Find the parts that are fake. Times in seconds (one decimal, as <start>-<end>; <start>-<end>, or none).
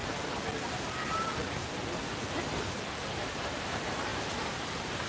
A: 3.1-5.1